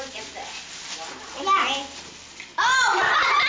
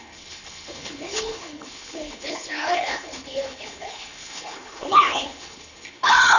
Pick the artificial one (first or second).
second